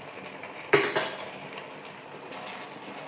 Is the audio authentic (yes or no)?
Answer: yes